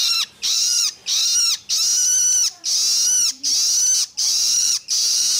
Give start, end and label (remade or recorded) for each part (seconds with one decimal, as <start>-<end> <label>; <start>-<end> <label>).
0.0-1.0 remade; 1.0-4.0 recorded; 4.0-5.4 remade